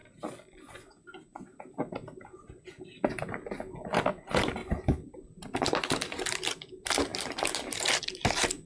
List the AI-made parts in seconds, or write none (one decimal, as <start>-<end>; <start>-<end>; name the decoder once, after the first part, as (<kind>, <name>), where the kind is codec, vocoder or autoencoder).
none